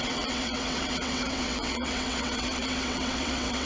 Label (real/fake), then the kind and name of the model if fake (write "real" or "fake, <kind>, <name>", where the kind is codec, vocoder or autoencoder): fake, vocoder, WaveNeXt